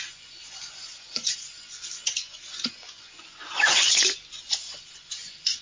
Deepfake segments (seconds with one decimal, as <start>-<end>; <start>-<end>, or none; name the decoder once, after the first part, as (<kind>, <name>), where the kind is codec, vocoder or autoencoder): 0.0-5.6 (vocoder, Vocos)